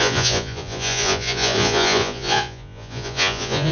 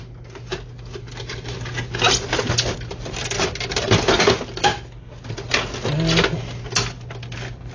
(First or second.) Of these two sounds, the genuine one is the second